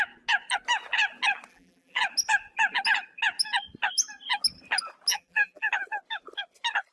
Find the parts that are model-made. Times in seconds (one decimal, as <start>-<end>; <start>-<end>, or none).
1.5-2.0; 5.1-5.7